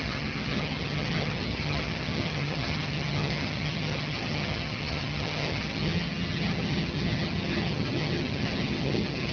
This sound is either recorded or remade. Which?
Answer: remade